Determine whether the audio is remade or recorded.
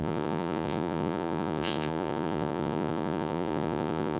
remade